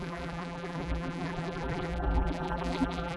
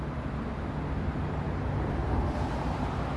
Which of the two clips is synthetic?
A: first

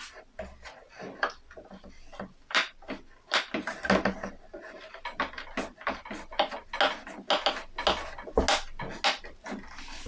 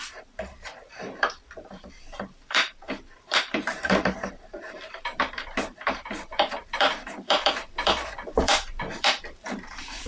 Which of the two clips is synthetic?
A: second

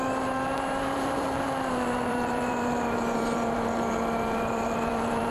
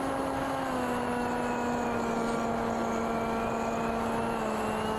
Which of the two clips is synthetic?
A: first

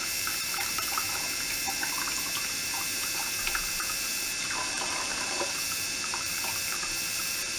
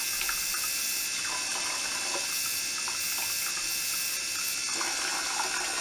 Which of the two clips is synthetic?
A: first